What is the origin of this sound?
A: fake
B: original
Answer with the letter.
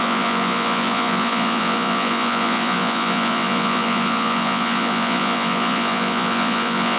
A